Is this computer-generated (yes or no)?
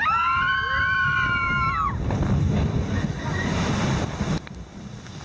no